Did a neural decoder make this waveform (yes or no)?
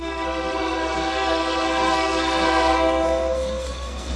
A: yes